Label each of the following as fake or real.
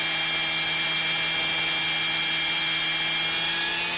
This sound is real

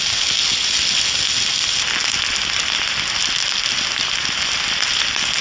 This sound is real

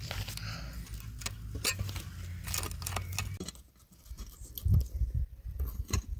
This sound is real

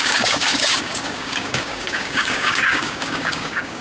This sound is fake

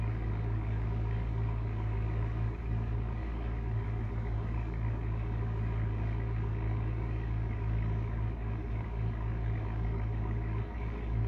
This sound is fake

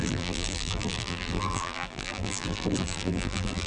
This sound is fake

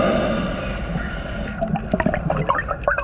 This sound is real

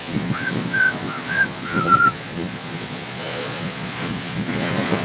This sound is fake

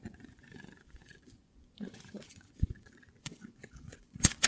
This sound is fake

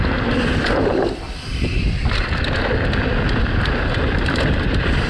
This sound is real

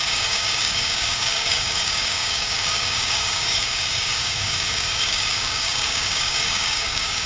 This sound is fake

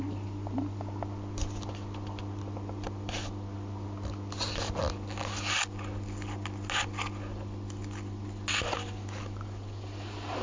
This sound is real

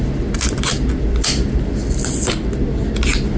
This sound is real